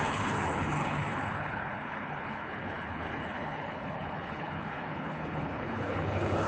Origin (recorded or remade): remade